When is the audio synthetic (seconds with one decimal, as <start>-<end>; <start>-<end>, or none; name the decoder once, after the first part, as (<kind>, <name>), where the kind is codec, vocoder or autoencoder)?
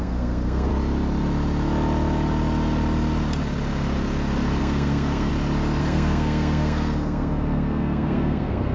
0.0-0.7 (codec, SNAC); 4.6-5.3; 5.8-8.7